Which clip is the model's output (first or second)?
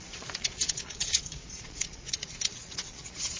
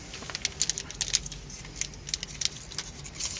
first